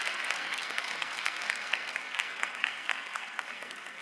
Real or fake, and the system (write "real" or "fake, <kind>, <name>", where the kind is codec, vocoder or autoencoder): fake, codec, SNAC